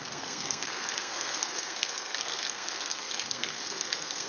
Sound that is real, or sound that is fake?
fake